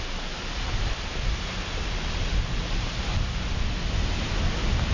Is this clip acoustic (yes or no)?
yes